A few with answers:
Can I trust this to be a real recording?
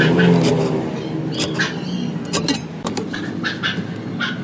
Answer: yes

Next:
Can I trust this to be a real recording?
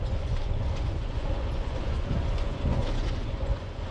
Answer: no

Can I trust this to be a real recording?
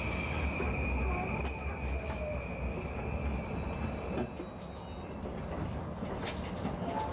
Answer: yes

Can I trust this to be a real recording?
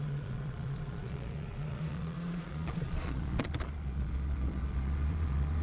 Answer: no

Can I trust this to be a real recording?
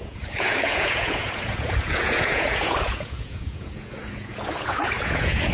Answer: no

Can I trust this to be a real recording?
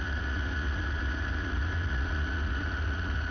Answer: no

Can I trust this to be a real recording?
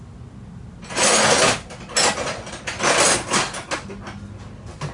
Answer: yes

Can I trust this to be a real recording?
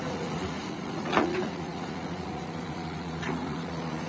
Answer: no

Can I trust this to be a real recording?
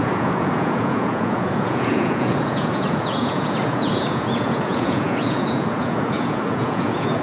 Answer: no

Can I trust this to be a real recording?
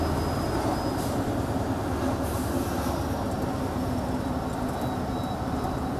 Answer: yes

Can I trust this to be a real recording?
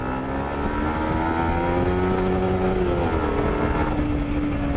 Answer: yes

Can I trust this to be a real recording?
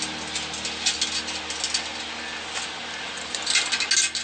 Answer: yes